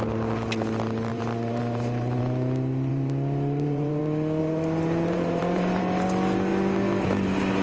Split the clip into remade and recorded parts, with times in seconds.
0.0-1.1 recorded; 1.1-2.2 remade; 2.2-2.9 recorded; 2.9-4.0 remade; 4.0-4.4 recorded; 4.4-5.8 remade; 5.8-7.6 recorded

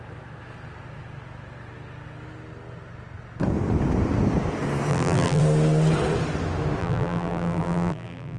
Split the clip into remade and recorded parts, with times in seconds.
0.0-4.9 recorded; 4.9-5.4 remade; 5.4-6.8 recorded; 6.8-8.4 remade

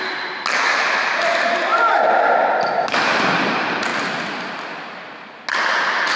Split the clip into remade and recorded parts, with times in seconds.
0.0-1.7 recorded; 1.7-3.2 remade; 3.2-3.9 recorded; 3.9-4.8 remade; 4.8-6.2 recorded

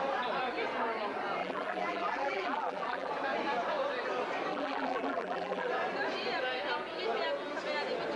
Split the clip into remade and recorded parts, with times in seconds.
0.0-1.4 recorded; 1.4-3.1 remade; 3.1-4.5 recorded; 4.5-5.7 remade; 5.7-8.2 recorded

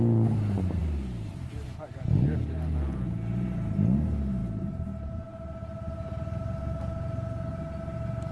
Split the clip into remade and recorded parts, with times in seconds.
0.0-8.3 recorded

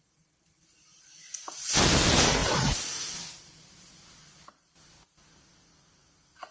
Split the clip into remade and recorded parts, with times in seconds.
0.0-2.4 recorded; 2.4-6.5 remade